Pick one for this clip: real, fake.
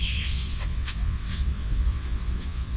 fake